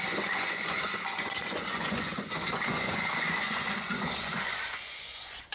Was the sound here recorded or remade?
remade